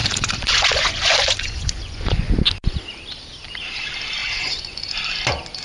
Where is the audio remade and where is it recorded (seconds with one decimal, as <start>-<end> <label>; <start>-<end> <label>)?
0.0-2.3 remade; 2.3-4.2 recorded; 4.2-4.9 remade; 4.9-5.6 recorded